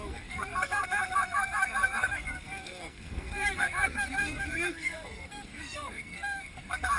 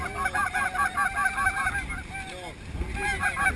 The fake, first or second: first